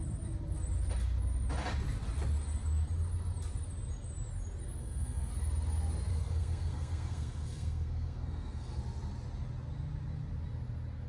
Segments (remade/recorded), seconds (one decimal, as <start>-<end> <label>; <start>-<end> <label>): 0.0-4.8 recorded; 4.8-5.3 remade; 5.3-6.1 recorded; 6.1-8.8 remade; 8.8-11.1 recorded